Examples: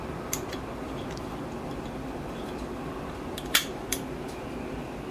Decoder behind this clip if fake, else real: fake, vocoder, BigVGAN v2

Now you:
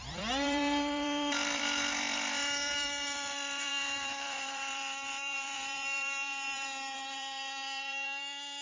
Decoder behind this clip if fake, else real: fake, vocoder, BigVGAN v2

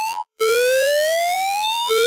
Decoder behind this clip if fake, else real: fake, vocoder, BigVGAN v2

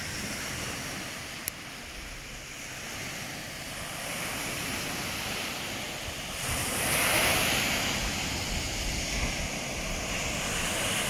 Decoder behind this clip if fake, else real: real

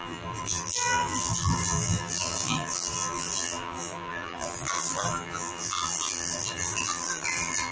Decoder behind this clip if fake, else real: fake, vocoder, BigVGAN v2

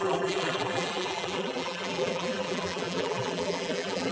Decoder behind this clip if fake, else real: fake, vocoder, BigVGAN v2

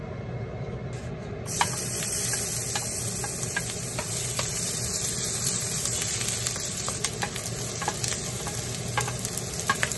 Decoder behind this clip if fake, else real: real